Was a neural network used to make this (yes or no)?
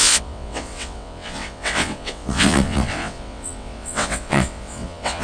yes